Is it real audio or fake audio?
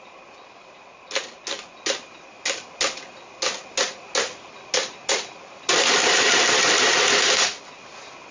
real